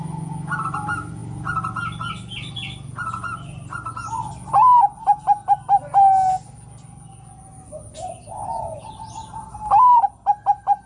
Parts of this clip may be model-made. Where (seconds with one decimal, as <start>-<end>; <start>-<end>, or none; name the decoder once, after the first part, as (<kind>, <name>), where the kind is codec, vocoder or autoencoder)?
none